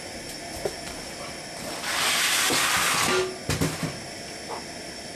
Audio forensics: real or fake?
real